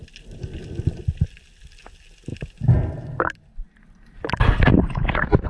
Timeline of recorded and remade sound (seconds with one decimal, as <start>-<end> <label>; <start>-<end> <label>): 0.0-5.5 recorded